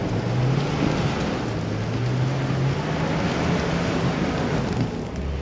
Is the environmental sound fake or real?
real